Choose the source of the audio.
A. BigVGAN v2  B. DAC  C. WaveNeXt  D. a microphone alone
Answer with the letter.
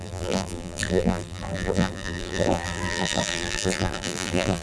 A